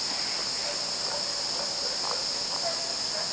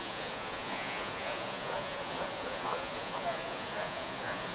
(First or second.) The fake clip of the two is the second